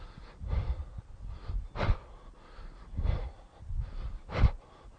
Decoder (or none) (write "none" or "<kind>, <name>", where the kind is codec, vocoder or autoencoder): none